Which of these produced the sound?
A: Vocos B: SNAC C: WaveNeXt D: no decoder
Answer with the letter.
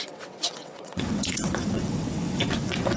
C